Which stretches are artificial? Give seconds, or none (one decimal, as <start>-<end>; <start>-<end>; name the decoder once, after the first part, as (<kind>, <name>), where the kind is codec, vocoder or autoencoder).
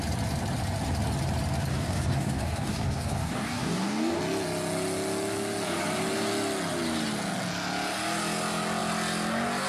1.7-4.2 (codec, DAC)